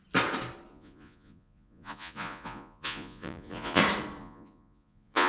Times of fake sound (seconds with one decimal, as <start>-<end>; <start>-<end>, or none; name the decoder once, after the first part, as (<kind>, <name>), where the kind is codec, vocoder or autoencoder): 0.7-3.8 (vocoder, Vocos); 4.2-5.3